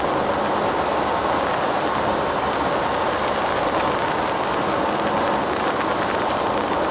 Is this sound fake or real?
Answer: real